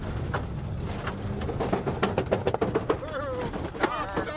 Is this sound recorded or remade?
recorded